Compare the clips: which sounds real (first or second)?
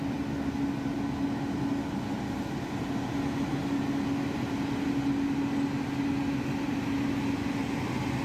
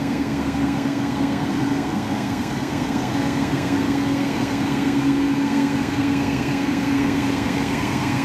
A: first